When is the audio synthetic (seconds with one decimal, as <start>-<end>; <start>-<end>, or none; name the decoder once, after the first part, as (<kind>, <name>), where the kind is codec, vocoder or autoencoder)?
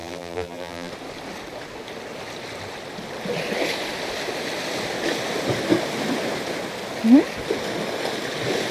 0.0-0.9 (vocoder, BigVGAN v2)